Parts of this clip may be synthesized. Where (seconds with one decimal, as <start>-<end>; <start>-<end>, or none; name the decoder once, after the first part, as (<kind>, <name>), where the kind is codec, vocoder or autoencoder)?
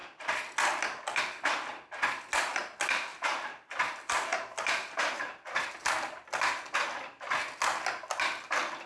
3.1-5.9 (vocoder, BigVGAN v2)